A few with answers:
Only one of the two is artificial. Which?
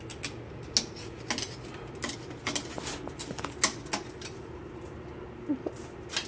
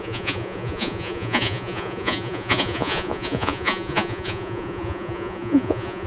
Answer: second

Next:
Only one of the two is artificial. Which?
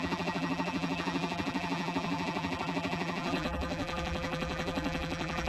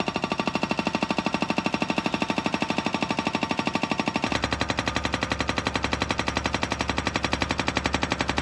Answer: first